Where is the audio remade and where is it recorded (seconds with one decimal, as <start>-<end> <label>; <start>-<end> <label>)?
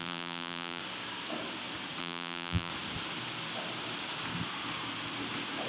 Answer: 0.0-0.8 remade; 0.8-2.0 recorded; 2.0-2.7 remade; 2.7-5.7 recorded